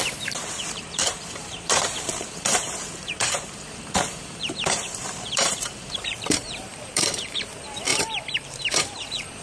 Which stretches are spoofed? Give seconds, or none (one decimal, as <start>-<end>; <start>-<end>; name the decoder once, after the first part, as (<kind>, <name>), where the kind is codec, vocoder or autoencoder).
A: 0.0-7.9 (vocoder, BigVGAN v2); 8.7-9.4